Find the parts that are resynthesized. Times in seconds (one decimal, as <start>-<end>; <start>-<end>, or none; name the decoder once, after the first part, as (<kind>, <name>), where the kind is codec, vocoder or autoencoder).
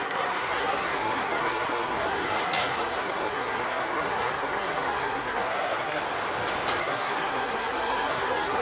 0.0-6.0 (codec, SNAC); 6.8-8.6